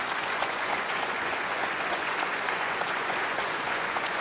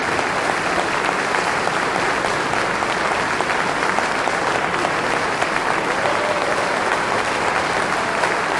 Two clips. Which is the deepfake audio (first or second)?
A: first